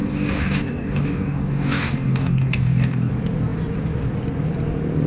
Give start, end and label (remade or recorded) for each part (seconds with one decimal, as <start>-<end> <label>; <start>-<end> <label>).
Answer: 0.0-3.1 remade; 3.1-5.1 recorded